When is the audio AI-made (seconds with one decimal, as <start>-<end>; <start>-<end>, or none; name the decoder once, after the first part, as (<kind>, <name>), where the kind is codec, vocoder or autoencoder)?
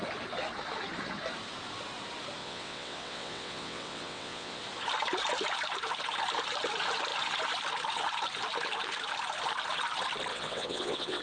2.4-4.6 (vocoder, WaveNeXt); 10.3-11.2